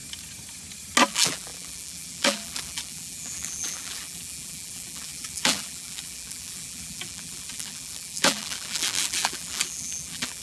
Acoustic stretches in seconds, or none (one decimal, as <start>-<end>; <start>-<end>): 0.0-1.1